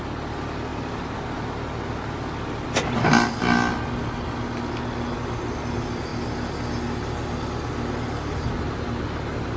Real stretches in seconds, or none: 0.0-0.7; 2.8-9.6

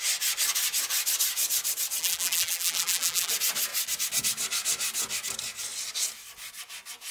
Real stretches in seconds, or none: 0.0-2.0; 3.3-7.1

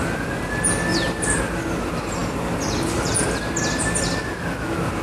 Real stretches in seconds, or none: 0.0-0.9; 1.4-5.0

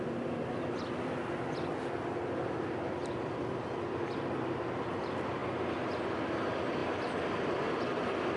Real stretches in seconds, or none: 0.0-3.0; 3.7-5.4; 6.0-8.4

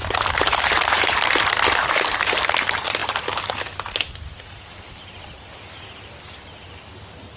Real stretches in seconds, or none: 2.4-7.4